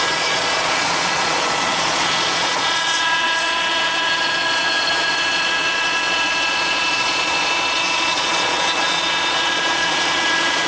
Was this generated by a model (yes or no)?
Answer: yes